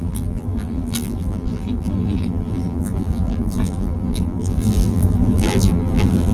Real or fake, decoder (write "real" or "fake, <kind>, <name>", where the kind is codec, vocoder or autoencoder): fake, vocoder, BigVGAN v2